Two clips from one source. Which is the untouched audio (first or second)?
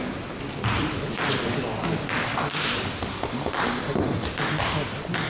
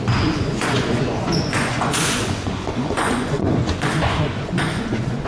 first